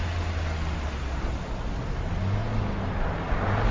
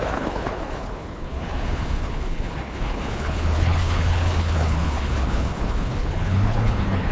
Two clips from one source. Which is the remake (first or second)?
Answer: second